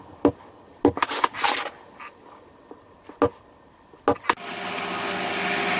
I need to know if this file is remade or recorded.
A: recorded